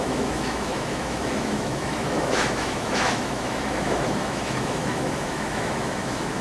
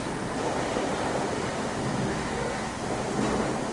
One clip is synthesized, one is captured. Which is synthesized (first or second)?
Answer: first